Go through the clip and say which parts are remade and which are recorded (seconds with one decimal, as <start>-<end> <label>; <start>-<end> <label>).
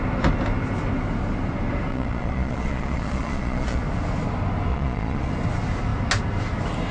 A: 0.0-1.9 recorded; 1.9-3.8 remade; 3.8-4.7 recorded; 4.7-5.3 remade; 5.3-6.9 recorded